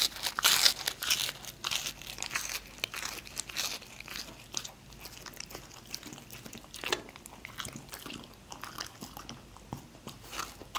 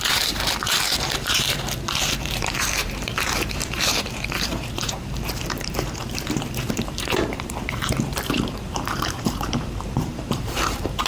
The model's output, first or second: second